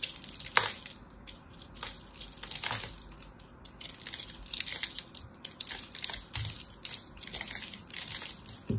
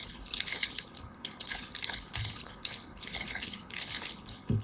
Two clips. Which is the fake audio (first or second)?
second